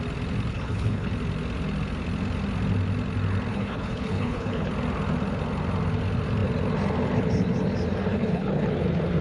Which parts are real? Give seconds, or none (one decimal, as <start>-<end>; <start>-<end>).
0.0-0.5; 1.1-3.5; 4.7-8.1; 8.7-9.2